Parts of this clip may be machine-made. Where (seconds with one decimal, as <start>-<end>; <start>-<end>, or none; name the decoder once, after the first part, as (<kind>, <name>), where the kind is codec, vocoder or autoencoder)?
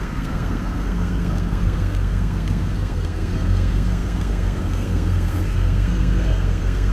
0.0-6.9 (codec, SNAC)